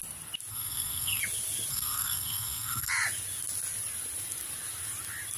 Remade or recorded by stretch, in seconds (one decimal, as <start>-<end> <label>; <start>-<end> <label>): 0.0-0.5 recorded; 0.5-1.2 remade; 1.2-1.7 recorded; 1.7-2.9 remade; 2.9-5.4 recorded